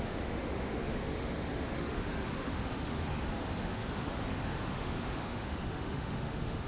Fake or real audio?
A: fake